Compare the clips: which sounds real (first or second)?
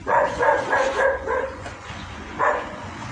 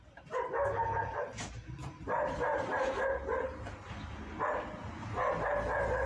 second